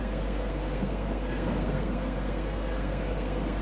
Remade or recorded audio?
remade